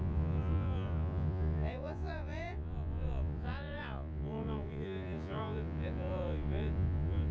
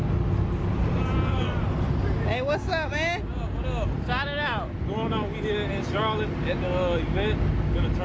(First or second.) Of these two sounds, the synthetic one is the first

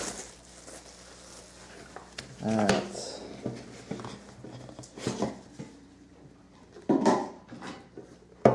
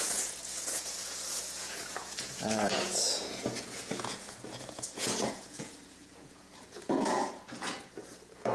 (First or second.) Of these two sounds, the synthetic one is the second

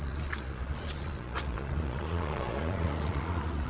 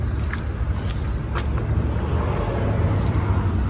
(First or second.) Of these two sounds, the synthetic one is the first